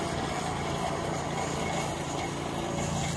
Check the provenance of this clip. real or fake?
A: real